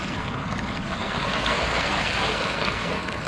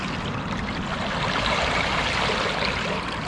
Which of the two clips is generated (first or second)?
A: first